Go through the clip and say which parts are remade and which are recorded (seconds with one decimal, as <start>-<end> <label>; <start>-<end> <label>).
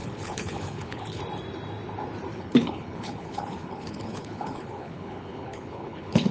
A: 0.0-1.2 remade; 1.2-2.3 recorded; 2.3-6.3 remade